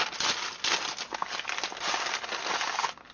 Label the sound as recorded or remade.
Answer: recorded